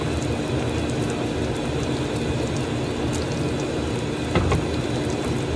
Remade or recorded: recorded